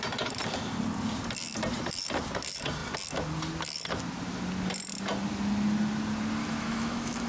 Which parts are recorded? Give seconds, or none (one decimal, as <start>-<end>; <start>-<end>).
0.0-6.4